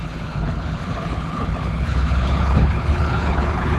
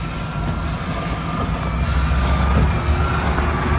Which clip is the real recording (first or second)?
second